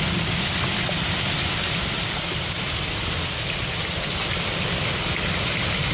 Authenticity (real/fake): real